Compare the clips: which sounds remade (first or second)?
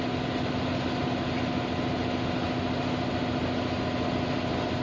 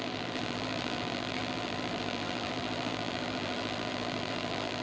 second